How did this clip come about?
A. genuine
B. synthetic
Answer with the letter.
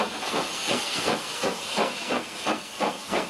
B